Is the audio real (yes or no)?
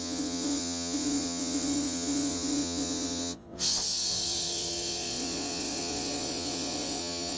no